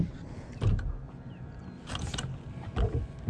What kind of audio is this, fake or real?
real